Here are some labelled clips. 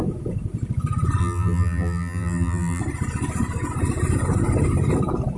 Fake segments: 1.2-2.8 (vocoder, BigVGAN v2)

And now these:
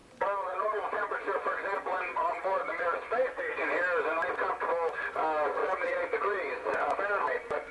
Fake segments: 0.0-3.4 (vocoder, Vocos); 5.6-7.7

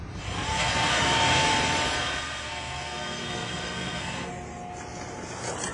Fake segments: 0.5-1.5 (codec, SNAC); 2.0-4.3